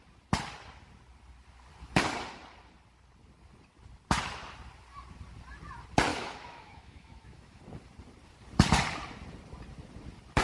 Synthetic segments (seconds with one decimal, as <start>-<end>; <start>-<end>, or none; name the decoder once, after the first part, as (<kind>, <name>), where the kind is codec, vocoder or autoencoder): 6.1-7.6 (autoencoder, DAC-VAE)